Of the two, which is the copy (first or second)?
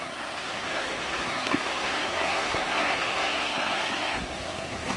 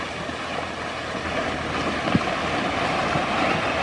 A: first